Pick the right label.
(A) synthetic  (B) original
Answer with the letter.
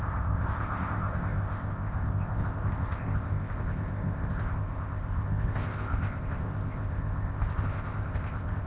A